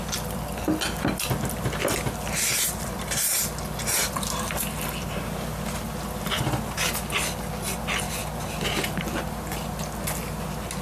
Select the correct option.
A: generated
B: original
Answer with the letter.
B